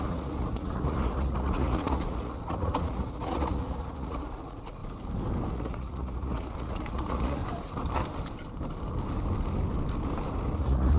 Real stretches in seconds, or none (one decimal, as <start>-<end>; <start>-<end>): 4.8-5.5; 7.4-10.6